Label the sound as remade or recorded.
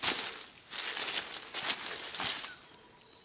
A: recorded